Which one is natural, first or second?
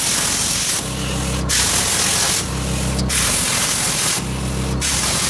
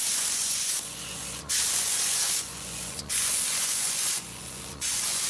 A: first